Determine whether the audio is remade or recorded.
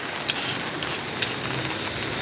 recorded